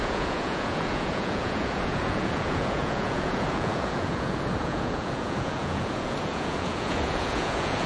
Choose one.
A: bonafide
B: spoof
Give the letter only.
B